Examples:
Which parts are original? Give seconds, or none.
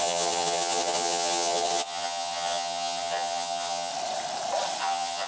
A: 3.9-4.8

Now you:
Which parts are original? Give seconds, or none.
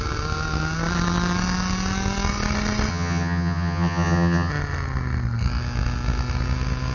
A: 0.0-2.9; 4.5-6.9